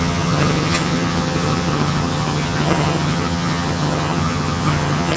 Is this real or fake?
fake